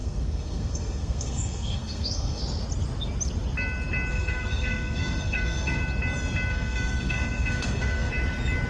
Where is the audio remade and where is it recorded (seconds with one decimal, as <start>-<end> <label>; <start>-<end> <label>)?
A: 0.0-2.4 remade; 2.4-4.1 recorded; 4.1-5.8 remade; 5.8-6.5 recorded; 6.5-8.1 remade; 8.1-8.7 recorded